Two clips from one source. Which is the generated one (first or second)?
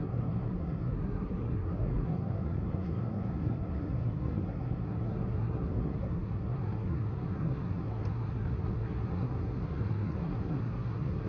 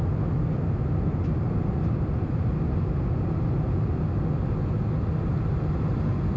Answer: first